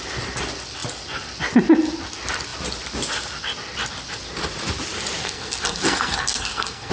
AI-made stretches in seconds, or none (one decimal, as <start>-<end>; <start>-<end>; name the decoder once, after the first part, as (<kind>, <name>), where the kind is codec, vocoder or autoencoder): 5.2-6.9 (codec, SNAC)